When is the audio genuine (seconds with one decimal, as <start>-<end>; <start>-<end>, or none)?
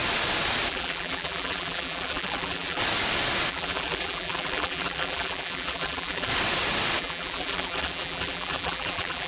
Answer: 0.0-0.7; 2.8-3.5; 6.3-7.0